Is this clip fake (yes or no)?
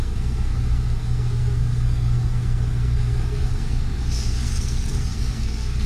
yes